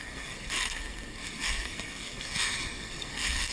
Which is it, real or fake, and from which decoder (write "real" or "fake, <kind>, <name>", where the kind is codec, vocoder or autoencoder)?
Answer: fake, codec, SNAC